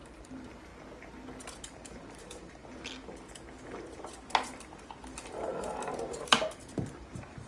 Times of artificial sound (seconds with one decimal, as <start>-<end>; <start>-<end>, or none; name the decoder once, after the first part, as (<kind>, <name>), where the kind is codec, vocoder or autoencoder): 0.0-0.7 (vocoder, BigVGAN v2); 1.6-2.6; 5.1-7.5